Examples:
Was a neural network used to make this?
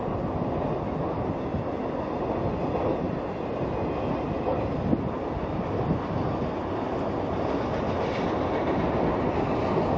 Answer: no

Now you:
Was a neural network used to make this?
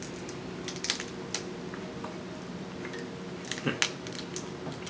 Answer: no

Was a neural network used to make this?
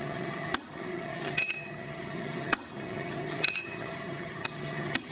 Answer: yes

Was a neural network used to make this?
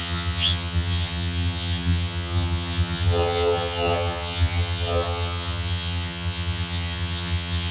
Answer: yes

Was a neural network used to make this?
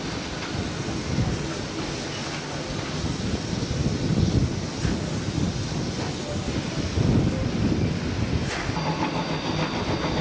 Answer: no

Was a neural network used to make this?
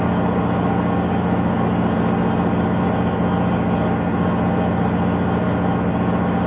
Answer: no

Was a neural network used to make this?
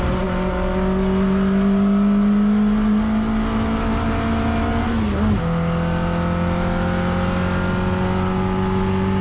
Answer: no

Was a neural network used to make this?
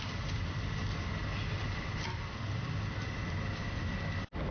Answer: no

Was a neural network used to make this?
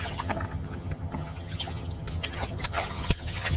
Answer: yes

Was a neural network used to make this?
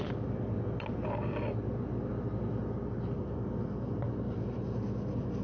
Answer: no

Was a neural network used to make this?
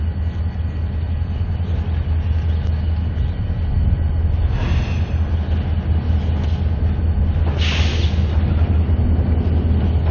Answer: no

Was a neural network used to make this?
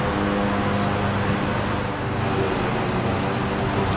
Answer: no